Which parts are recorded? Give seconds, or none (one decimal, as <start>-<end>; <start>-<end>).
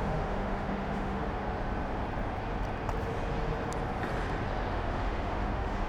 1.2-4.7